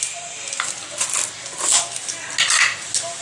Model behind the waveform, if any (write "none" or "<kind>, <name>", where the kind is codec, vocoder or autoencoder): none